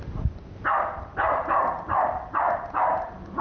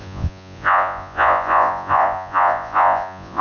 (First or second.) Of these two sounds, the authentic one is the first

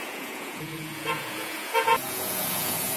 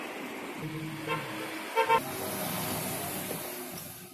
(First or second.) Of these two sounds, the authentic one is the second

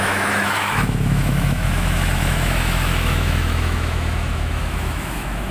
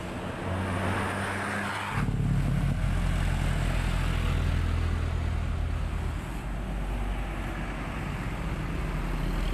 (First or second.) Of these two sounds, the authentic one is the second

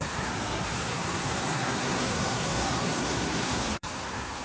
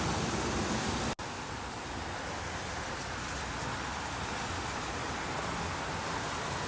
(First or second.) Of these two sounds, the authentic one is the second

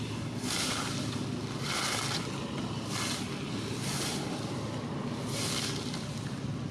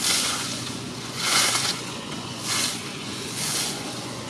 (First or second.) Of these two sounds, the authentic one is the first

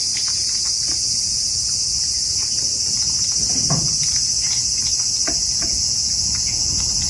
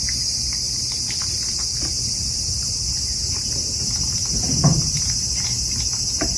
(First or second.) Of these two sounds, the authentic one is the second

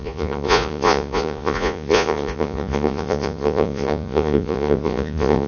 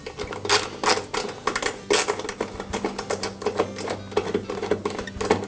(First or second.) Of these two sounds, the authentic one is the second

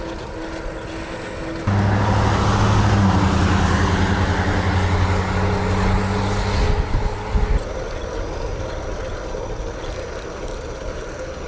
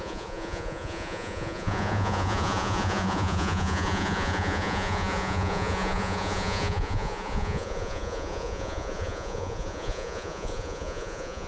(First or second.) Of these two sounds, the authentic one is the first